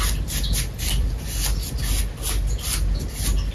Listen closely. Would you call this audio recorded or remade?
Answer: recorded